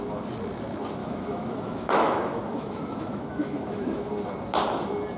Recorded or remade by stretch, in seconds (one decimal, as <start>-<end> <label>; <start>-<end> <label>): 0.0-1.0 recorded; 1.0-4.1 remade; 4.1-5.2 recorded